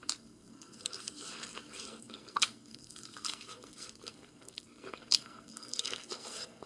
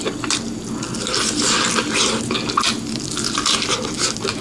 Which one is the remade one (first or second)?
first